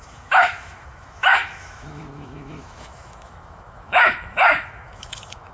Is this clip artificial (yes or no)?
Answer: yes